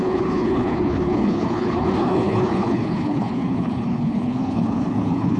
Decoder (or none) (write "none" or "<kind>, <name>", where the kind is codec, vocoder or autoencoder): codec, HILCodec